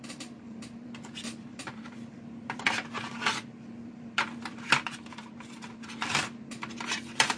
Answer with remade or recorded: remade